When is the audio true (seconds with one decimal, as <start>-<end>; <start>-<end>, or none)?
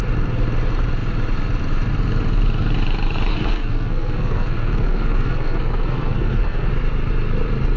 0.0-3.3; 6.7-7.8